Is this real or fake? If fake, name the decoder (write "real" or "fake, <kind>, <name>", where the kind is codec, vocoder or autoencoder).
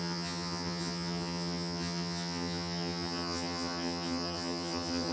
fake, vocoder, HiFi-GAN